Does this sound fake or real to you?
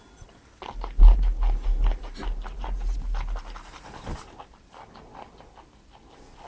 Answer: real